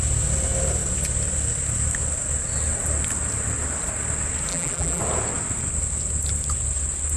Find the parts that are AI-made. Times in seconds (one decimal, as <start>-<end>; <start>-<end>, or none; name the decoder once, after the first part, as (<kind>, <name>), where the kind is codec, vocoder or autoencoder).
4.5-5.0 (vocoder, BigVGAN v2)